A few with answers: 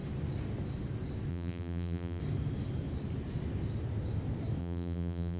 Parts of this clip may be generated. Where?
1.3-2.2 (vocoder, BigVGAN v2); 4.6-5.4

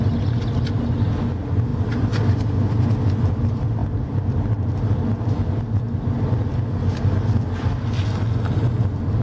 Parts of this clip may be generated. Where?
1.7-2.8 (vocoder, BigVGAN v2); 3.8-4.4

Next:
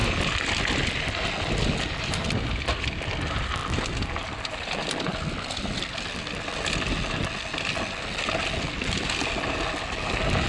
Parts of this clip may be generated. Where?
0.0-0.6 (vocoder, BigVGAN v2)

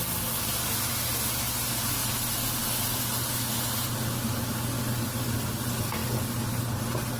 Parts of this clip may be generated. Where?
none

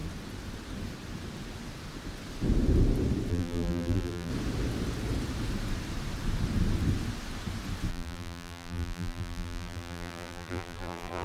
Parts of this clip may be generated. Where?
3.3-4.3 (vocoder, BigVGAN v2); 7.9-11.2

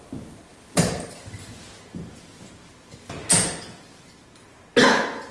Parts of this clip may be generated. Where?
0.5-2.7 (vocoder, BigVGAN v2)

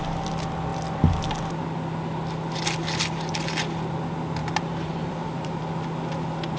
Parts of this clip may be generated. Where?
4.4-5.6 (vocoder, BigVGAN v2)

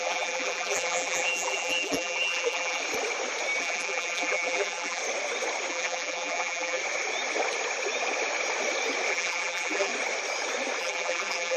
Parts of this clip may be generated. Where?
0.0-2.8 (vocoder, BigVGAN v2); 3.6-5.0; 5.7-6.8; 9.1-9.9; 10.8-11.6